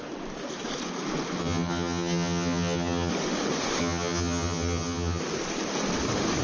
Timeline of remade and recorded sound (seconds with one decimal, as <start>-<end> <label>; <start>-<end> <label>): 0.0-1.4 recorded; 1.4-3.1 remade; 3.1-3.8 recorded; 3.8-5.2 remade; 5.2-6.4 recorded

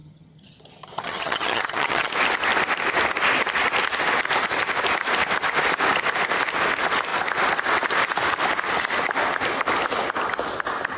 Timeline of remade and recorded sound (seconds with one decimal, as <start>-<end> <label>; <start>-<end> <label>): 0.0-2.1 remade; 2.1-11.0 recorded

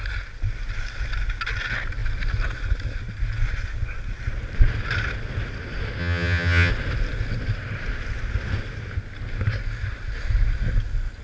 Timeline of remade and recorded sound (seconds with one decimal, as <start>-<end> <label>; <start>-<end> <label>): 0.0-6.0 recorded; 6.0-6.7 remade; 6.7-11.2 recorded

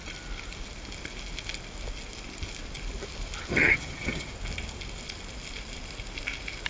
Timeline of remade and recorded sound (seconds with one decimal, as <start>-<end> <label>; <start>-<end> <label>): 0.0-3.5 recorded; 3.5-4.3 remade; 4.3-6.7 recorded